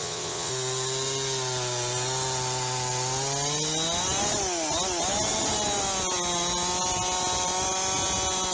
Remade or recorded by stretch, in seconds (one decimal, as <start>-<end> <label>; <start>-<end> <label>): 0.0-0.5 remade; 0.5-8.5 recorded